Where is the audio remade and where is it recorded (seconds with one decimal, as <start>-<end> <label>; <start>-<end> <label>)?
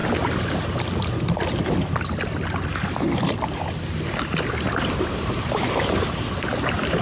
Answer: 0.0-7.0 recorded